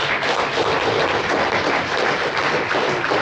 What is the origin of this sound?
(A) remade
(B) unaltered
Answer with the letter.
B